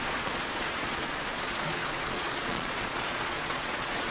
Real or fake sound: fake